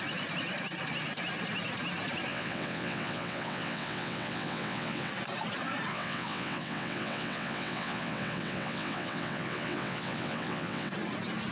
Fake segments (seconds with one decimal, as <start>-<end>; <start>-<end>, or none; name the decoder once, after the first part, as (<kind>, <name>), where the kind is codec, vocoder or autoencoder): 2.3-5.1 (vocoder, WaveNeXt); 5.9-10.9